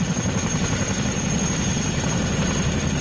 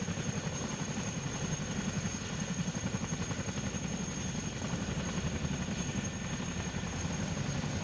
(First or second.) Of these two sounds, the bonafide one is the first